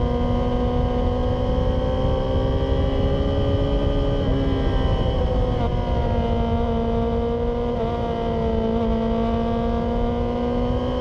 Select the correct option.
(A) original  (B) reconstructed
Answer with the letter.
A